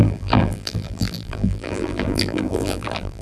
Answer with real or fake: fake